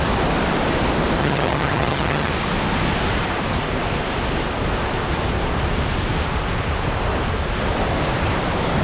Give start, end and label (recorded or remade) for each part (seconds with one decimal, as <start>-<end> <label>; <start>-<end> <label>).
0.0-1.2 recorded; 1.2-2.3 remade; 2.3-8.8 recorded

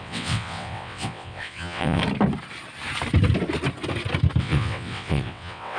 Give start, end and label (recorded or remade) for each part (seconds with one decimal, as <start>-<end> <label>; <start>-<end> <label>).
0.0-2.0 remade; 2.0-4.4 recorded; 4.4-5.8 remade

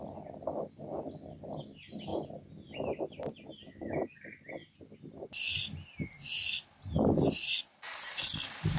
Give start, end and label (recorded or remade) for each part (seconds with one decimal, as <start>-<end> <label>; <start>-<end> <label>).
0.0-8.8 recorded

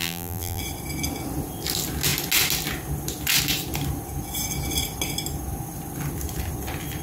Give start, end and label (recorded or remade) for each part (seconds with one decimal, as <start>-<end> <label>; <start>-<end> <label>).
0.0-0.6 remade; 0.6-7.0 recorded